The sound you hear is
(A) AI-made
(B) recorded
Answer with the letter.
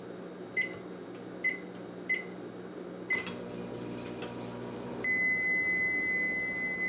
B